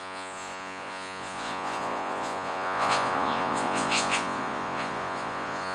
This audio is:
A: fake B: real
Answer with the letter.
A